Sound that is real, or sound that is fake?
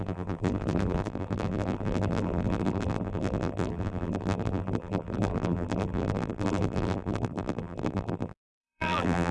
fake